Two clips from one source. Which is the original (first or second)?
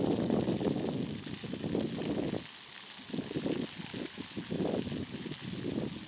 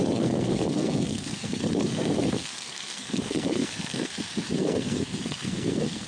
first